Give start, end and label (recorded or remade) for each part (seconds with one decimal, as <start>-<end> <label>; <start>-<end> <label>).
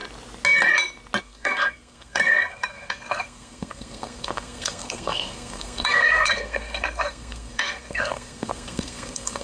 0.0-1.2 recorded; 1.2-9.4 remade